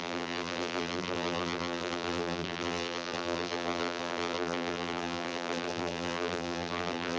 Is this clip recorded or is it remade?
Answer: remade